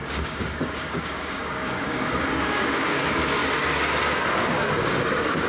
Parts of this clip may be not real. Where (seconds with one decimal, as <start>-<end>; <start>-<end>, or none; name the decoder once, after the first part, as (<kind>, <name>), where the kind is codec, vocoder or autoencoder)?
0.0-3.4 (codec, DAC); 4.4-5.5